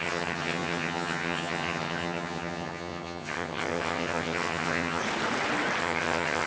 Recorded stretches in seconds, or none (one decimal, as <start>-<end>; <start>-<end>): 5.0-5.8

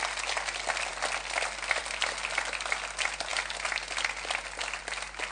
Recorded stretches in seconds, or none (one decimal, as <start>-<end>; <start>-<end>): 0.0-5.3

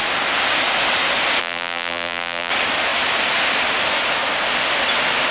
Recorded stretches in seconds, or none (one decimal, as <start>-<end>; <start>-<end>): 0.0-1.4; 2.5-5.3